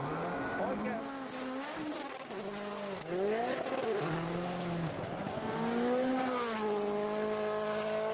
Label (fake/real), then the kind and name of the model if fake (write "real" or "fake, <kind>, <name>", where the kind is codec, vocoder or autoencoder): real